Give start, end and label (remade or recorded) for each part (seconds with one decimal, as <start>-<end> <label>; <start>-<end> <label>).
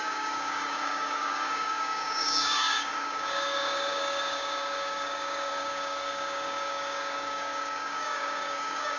0.0-9.0 remade